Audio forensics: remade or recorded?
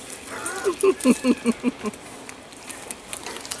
recorded